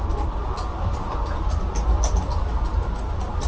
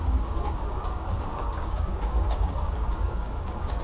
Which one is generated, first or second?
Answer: second